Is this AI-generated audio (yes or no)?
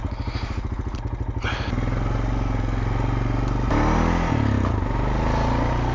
no